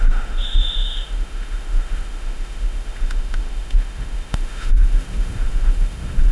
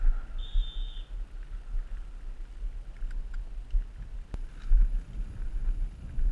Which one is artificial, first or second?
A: first